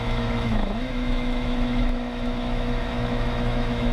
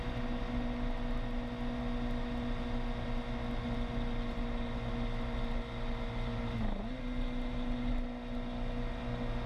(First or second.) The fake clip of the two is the first